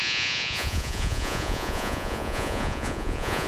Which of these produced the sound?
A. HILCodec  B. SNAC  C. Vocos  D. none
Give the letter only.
C